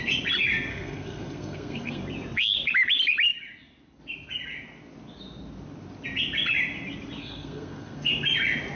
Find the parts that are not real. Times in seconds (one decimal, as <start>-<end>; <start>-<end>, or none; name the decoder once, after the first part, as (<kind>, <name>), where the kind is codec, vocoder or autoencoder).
0.7-2.0 (codec, SNAC); 7.2-8.1